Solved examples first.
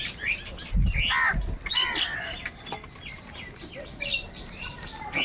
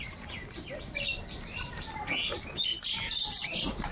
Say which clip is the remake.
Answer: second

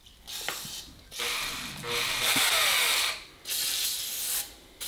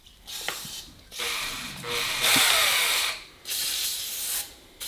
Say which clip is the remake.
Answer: second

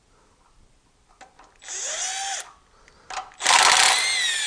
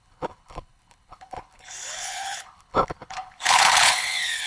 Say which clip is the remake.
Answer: second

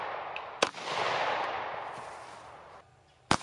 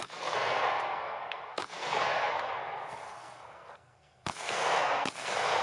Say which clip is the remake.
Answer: second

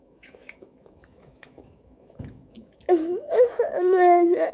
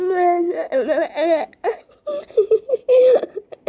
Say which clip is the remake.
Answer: first